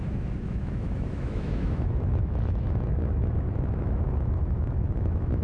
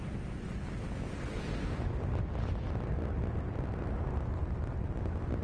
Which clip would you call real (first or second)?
second